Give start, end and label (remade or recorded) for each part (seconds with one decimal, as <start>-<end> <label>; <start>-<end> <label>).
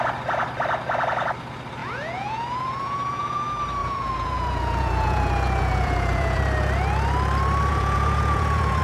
0.0-1.8 recorded; 1.8-3.4 remade; 3.4-3.8 recorded; 3.8-6.4 remade; 6.4-7.7 recorded; 7.7-8.8 remade